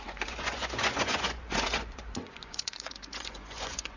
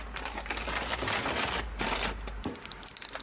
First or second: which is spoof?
first